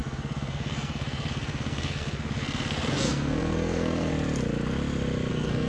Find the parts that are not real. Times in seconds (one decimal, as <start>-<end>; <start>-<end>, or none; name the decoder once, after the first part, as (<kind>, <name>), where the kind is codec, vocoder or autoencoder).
0.0-4.1 (codec, SNAC); 5.3-5.7